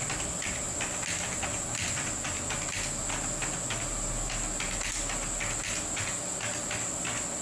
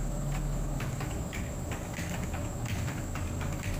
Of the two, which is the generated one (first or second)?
second